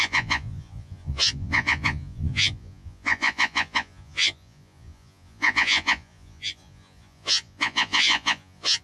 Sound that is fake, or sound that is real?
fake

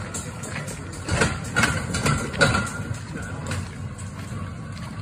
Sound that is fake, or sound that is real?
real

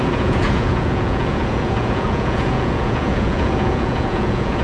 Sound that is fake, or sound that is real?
fake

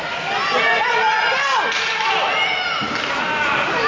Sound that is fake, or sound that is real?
real